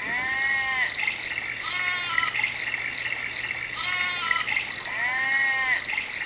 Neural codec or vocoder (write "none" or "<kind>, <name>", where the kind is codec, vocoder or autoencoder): none